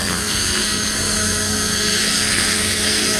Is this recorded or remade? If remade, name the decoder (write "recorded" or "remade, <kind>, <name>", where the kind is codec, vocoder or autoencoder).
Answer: remade, codec, SNAC